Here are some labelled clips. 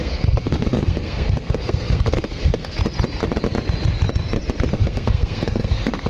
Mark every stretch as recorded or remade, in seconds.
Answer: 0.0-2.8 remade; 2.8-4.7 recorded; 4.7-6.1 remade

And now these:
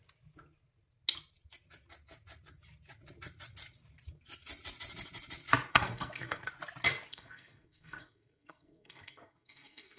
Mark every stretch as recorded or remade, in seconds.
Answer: 0.0-5.7 recorded; 5.7-6.5 remade; 6.5-7.1 recorded; 7.1-10.0 remade

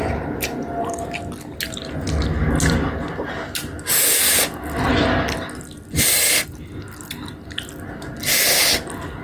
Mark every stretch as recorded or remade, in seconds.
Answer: 0.0-9.2 recorded

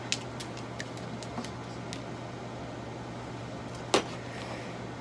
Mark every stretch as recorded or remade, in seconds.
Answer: 0.0-5.0 recorded

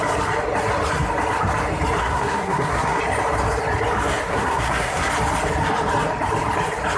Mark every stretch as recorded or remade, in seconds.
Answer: 0.0-2.0 recorded; 2.0-3.0 remade; 3.0-4.3 recorded; 4.3-5.1 remade; 5.1-7.0 recorded

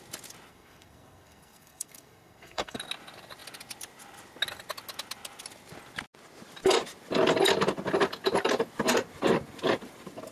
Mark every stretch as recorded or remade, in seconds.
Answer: 0.0-0.5 recorded; 0.5-2.8 remade; 2.8-10.3 recorded

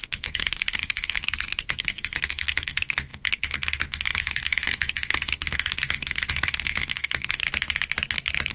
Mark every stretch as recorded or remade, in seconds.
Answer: 0.0-7.4 remade; 7.4-8.5 recorded

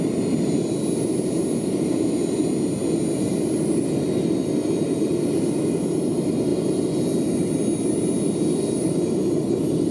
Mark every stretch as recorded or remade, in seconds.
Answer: 0.0-9.9 recorded